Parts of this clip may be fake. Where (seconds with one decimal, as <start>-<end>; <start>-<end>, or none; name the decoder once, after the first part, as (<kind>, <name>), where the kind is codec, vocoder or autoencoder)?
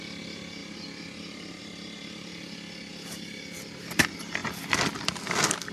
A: 0.6-1.6 (vocoder, BigVGAN v2)